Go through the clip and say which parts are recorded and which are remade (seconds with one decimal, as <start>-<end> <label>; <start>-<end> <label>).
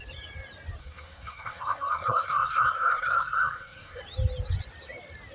0.0-0.8 recorded; 0.8-4.0 remade; 4.0-5.3 recorded